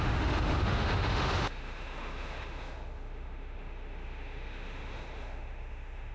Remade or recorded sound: remade